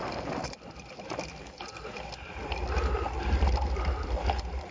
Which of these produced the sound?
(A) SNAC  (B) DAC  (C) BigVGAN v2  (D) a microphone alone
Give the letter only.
D